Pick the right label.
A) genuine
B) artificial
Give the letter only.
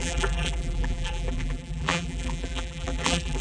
B